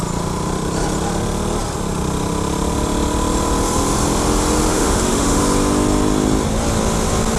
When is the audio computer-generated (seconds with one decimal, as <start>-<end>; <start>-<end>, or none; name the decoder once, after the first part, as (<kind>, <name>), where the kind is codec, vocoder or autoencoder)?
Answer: 4.7-5.4 (autoencoder, DAC-VAE)